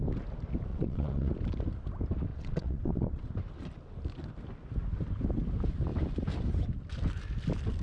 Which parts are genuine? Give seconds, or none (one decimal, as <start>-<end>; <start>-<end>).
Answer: 0.0-0.7; 1.3-2.3; 3.3-7.8